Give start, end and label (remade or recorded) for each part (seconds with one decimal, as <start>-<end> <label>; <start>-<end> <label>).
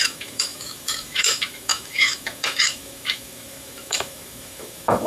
0.0-5.1 remade